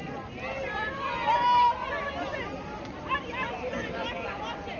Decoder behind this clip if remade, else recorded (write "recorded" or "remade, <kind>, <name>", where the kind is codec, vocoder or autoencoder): recorded